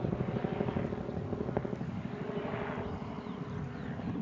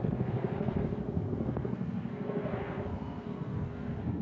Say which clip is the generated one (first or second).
second